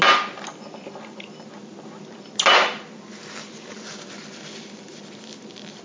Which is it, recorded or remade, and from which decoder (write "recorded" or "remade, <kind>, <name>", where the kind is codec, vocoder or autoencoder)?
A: recorded